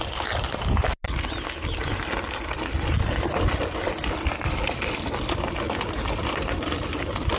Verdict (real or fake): real